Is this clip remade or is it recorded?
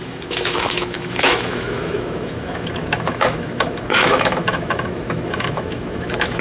remade